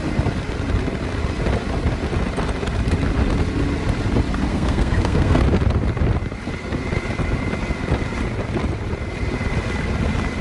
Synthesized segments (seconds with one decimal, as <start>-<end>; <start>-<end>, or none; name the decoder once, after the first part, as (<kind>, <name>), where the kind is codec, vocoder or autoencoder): 4.5-5.4 (codec, SNAC)